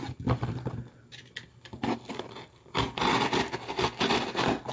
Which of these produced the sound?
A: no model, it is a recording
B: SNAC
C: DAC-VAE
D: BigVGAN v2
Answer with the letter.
A